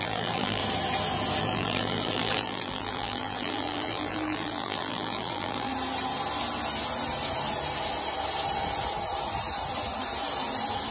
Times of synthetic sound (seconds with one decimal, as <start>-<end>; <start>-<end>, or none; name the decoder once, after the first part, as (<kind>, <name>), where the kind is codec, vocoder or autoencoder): 0.0-0.6 (vocoder, BigVGAN v2); 1.4-5.7